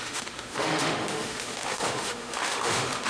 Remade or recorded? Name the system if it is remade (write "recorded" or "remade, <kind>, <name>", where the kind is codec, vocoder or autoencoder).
remade, autoencoder, DAC-VAE